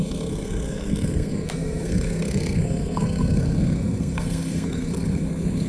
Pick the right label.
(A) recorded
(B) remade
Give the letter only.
B